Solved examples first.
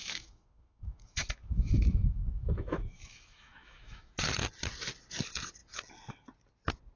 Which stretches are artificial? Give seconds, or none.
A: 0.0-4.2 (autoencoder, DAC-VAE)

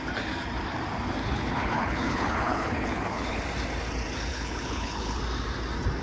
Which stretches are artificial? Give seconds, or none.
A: 1.2-3.4 (codec, HILCodec); 4.3-5.2

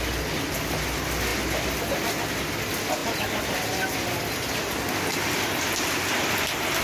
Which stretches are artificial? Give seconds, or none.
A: none

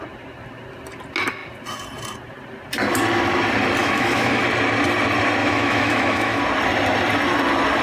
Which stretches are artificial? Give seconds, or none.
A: 3.8-4.4 (autoencoder, DAC-VAE); 5.4-6.4

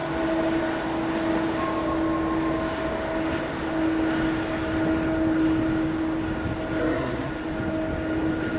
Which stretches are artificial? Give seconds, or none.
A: 6.8-7.3 (codec, SNAC)

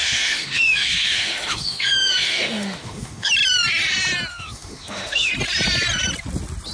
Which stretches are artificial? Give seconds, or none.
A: 0.0-3.3 (autoencoder, DAC-VAE); 4.3-5.3

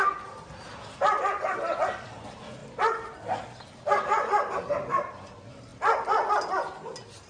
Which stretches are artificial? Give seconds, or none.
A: none

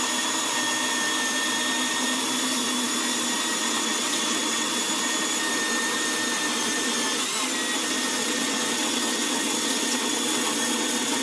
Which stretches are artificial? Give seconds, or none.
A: 3.6-4.7 (vocoder, WaveNeXt); 8.2-11.2